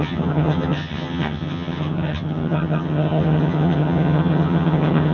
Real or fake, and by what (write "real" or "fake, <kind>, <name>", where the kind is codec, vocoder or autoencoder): fake, vocoder, HiFi-GAN